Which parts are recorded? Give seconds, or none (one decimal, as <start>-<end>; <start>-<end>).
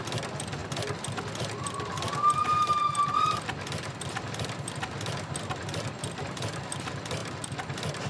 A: 0.0-8.1